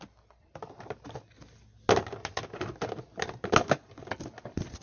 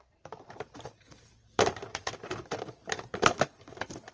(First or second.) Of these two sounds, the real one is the first